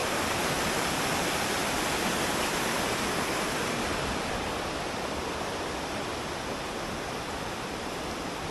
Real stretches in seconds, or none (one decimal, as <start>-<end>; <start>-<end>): 1.4-2.5; 6.4-8.5